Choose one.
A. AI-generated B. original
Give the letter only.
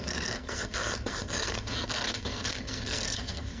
A